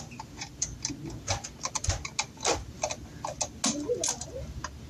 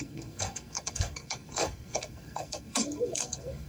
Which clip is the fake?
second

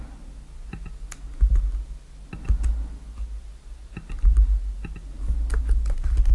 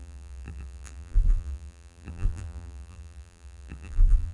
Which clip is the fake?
second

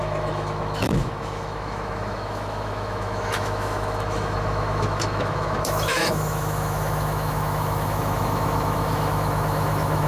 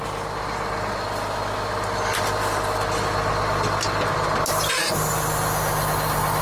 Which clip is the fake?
first